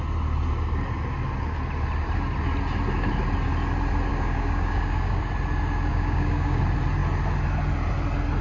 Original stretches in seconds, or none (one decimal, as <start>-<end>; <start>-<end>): 0.0-4.1; 5.2-5.9; 6.6-8.4